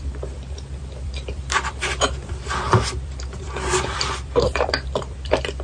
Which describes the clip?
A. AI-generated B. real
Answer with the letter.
A